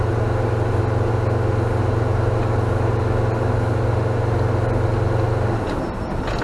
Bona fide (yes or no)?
yes